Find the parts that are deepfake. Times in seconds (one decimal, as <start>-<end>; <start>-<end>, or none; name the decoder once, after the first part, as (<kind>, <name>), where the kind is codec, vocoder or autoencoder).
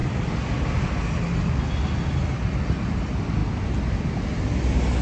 none